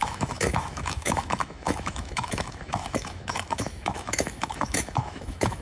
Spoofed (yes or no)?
yes